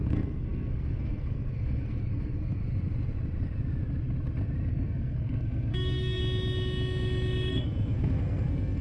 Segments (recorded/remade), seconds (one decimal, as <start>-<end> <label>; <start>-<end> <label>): 0.0-2.6 remade; 2.6-4.7 recorded; 4.7-6.2 remade; 6.2-7.5 recorded; 7.5-8.8 remade